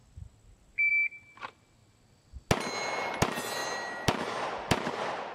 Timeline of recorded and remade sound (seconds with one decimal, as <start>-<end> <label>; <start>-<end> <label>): 0.0-5.3 recorded